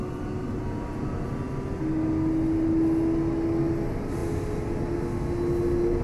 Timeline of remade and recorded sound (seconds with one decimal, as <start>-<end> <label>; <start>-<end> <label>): 0.0-6.0 recorded